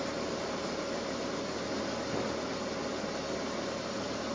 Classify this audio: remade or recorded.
recorded